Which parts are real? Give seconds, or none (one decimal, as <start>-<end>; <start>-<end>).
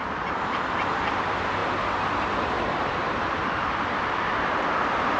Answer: 0.0-5.2